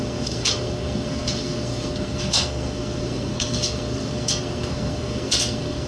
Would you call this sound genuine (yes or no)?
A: no